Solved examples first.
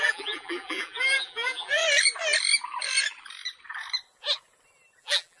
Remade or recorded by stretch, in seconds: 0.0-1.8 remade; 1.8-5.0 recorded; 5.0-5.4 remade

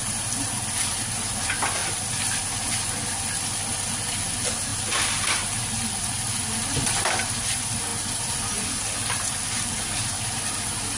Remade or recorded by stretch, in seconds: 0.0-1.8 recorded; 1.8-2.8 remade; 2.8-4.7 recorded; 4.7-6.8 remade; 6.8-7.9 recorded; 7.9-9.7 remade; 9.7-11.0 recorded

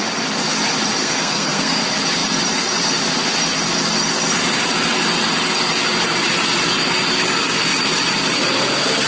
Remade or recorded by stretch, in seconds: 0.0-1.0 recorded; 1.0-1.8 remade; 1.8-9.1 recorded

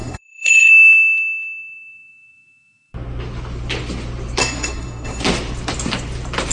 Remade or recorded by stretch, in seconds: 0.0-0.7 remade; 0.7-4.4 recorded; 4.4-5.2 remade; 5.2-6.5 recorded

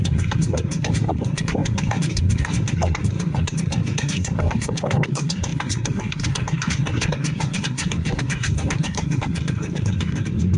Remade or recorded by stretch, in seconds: 0.0-10.6 remade